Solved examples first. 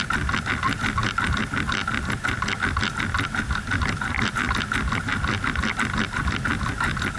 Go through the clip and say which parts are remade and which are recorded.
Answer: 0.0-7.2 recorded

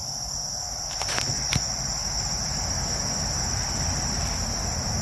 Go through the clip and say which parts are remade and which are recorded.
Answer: 0.0-0.6 remade; 0.6-2.0 recorded; 2.0-3.4 remade; 3.4-5.0 recorded

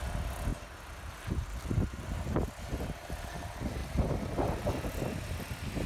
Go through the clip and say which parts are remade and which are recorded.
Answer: 0.0-3.8 recorded; 3.8-4.3 remade; 4.3-5.9 recorded

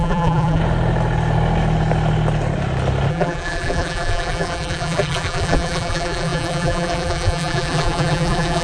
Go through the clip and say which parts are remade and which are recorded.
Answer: 0.0-0.6 remade; 0.6-3.1 recorded; 3.1-8.6 remade